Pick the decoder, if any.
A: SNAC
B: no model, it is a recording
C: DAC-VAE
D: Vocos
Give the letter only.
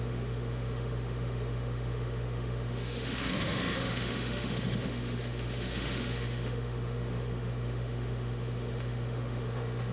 C